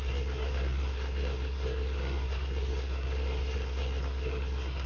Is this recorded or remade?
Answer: remade